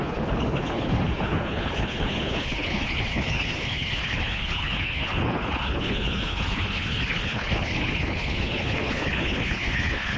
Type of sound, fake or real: fake